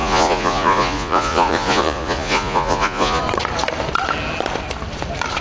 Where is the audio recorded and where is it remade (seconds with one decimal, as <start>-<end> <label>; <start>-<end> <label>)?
0.0-3.2 remade; 3.2-5.4 recorded